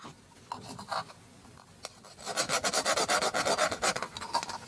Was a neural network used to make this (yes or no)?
no